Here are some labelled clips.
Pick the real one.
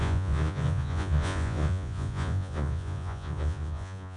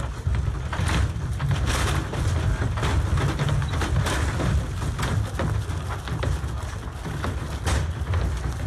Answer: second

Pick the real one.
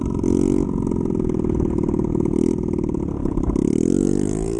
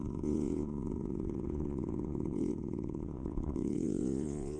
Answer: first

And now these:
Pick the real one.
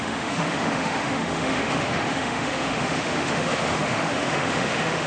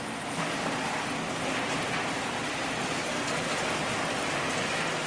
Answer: second